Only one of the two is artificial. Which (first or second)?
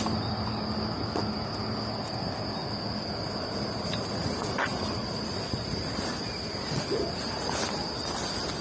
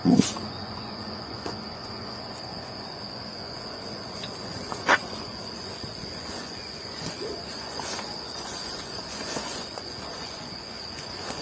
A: second